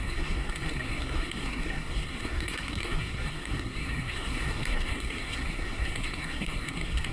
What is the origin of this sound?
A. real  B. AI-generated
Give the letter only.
B